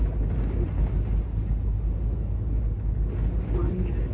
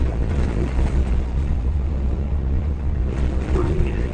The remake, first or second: second